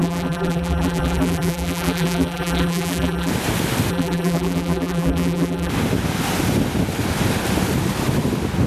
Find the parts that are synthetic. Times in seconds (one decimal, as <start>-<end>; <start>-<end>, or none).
0.0-3.3; 3.9-5.7